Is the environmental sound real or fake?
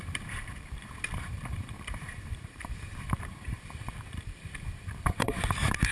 fake